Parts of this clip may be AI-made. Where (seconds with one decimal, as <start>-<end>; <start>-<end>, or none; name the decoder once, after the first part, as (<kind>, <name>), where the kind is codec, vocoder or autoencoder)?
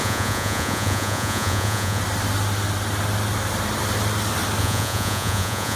0.0-2.0 (vocoder, Vocos); 4.6-5.8